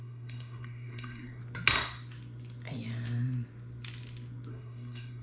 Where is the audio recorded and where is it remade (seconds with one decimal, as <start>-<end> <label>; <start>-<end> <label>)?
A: 0.0-1.4 remade; 1.4-4.5 recorded; 4.5-5.2 remade